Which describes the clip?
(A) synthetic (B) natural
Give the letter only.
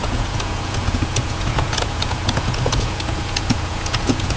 A